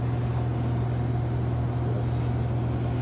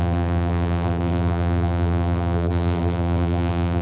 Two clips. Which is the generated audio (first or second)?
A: second